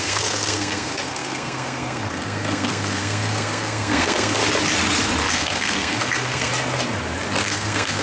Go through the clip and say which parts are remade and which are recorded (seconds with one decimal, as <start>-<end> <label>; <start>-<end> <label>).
0.0-4.4 remade; 4.4-5.3 recorded; 5.3-6.5 remade; 6.5-7.4 recorded; 7.4-8.0 remade